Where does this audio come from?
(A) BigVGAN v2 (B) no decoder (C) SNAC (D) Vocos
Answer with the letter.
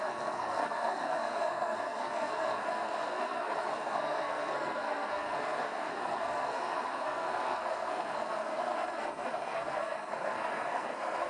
C